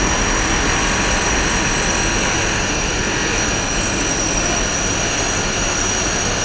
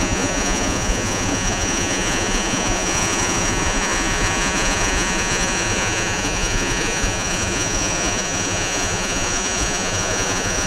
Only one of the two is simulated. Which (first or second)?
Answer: second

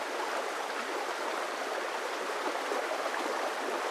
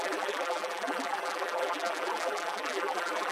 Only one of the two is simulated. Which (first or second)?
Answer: second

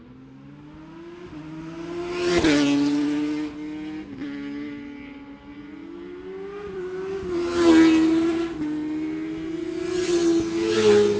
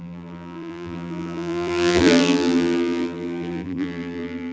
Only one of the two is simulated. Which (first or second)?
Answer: second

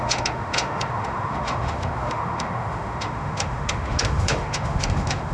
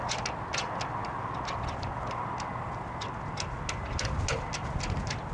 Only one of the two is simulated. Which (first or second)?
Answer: first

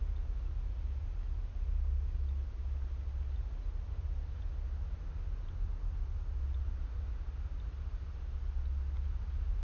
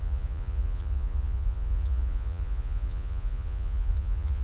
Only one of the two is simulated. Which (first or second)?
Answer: second